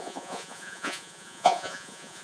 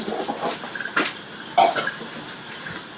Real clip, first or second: second